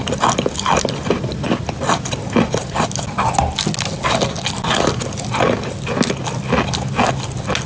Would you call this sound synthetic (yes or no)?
no